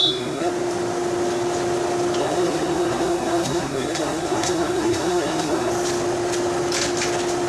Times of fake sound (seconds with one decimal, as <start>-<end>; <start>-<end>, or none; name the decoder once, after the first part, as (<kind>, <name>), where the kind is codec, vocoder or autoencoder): 0.0-0.5 (codec, SNAC); 2.2-5.7